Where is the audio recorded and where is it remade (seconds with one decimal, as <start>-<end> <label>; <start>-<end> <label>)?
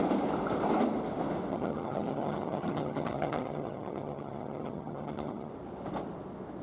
0.0-1.5 recorded; 1.5-5.5 remade; 5.5-6.6 recorded